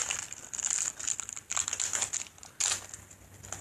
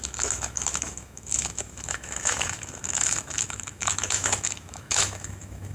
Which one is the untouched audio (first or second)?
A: first